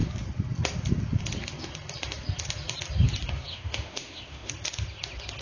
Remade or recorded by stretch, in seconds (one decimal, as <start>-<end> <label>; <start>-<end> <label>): 0.0-3.5 recorded; 3.5-4.5 remade; 4.5-5.4 recorded